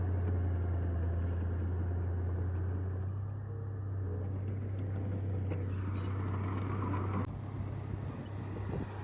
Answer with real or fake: real